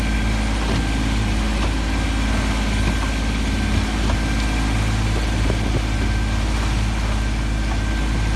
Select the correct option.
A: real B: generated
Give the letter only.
A